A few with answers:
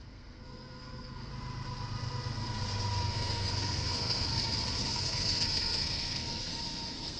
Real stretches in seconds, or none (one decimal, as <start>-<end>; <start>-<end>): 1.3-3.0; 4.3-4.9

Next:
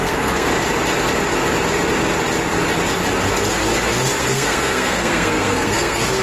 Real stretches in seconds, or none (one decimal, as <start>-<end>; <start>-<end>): 0.5-4.2

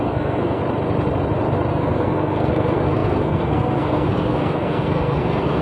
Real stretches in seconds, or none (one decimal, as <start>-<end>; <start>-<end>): 0.6-1.7